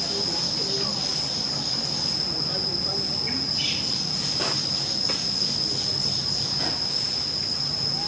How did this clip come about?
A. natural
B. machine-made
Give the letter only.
A